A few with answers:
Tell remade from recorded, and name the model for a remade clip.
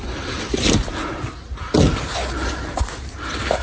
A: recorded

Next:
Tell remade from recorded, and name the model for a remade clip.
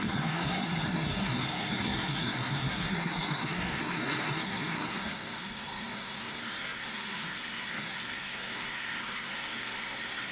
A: remade, codec, SNAC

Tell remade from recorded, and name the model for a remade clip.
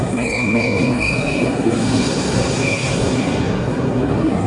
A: remade, codec, SNAC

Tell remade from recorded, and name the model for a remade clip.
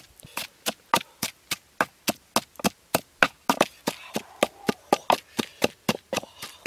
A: recorded